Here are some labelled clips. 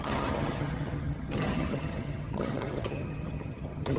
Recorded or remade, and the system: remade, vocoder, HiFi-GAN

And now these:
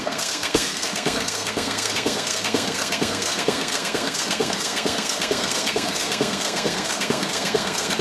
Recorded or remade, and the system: remade, codec, SNAC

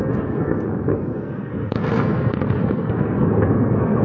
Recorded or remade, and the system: remade, codec, SNAC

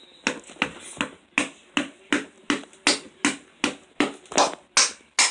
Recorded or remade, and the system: recorded